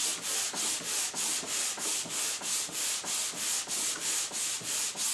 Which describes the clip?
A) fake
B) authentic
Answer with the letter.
B